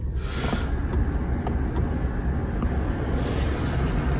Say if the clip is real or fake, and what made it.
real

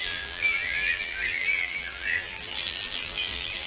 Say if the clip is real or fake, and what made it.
fake, vocoder, BigVGAN v2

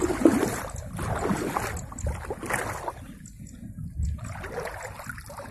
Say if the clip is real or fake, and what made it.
real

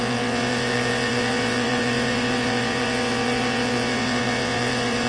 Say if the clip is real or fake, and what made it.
fake, vocoder, WaveNeXt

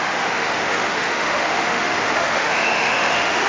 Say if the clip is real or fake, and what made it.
fake, autoencoder, DAC-VAE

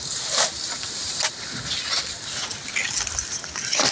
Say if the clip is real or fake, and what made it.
real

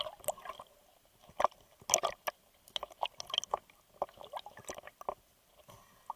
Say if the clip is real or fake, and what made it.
real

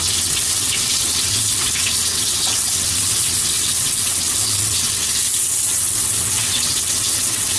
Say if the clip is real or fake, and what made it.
fake, vocoder, WaveNeXt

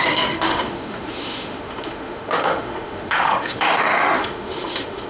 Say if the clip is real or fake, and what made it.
fake, autoencoder, DAC-VAE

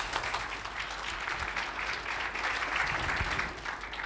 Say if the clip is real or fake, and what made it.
real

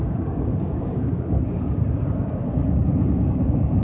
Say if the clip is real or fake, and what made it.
fake, codec, DAC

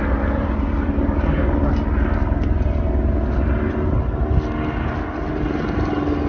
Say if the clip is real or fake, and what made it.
real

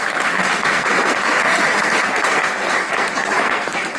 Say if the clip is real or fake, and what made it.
fake, codec, SNAC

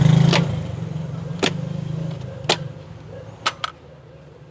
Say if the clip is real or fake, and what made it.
real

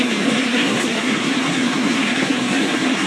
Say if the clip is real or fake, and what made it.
fake, codec, SNAC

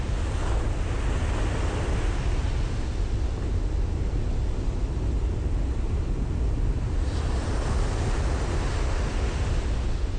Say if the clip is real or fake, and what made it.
real